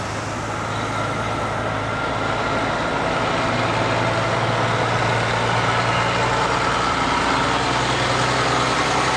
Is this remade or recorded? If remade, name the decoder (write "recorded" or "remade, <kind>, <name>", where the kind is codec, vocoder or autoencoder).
recorded